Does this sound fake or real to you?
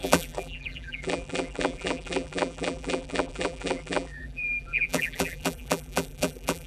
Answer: fake